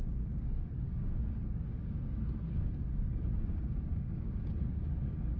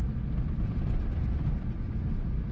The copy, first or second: first